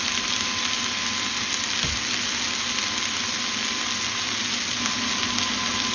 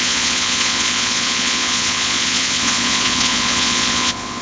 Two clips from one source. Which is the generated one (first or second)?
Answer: second